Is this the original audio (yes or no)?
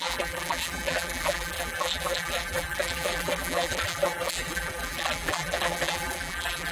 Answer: no